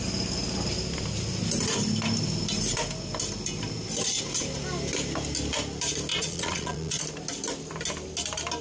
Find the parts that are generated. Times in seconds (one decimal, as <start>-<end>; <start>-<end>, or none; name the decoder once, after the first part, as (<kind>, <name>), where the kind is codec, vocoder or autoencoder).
6.1-7.0 (vocoder, Vocos)